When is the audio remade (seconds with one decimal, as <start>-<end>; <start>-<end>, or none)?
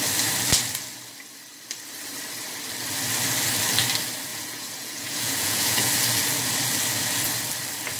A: 4.3-5.9